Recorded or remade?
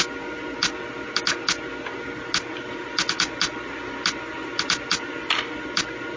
recorded